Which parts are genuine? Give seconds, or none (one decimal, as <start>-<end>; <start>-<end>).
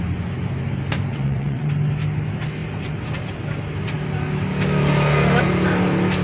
0.0-1.1; 1.7-6.2